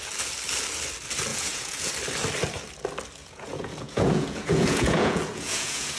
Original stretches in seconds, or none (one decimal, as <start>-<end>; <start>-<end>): 0.0-1.3; 1.9-3.2